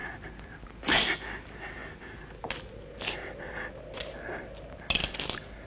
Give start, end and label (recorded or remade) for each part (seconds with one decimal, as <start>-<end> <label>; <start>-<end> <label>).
0.0-5.7 recorded